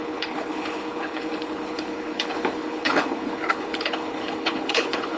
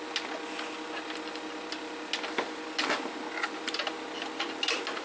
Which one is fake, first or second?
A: first